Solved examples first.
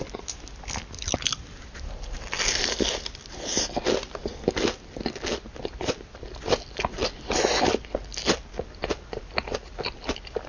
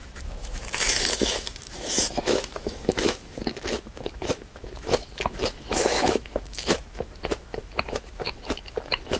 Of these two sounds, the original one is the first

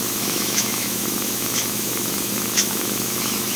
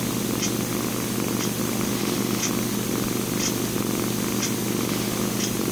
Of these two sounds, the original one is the second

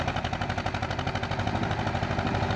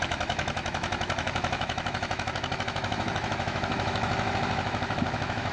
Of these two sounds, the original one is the first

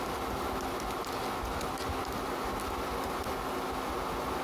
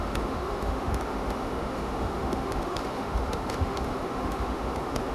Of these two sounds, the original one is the first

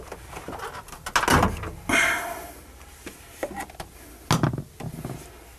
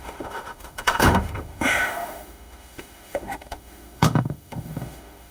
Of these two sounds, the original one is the first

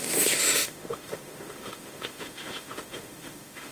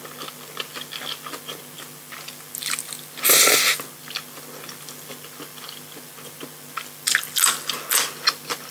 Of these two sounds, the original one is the second